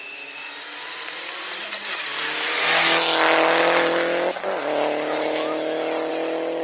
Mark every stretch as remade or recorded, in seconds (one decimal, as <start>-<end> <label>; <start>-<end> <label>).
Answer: 0.0-6.6 recorded